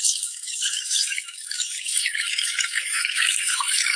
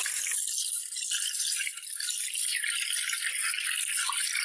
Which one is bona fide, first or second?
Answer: second